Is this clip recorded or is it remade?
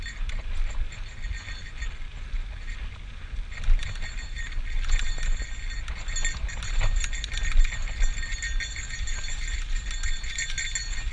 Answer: recorded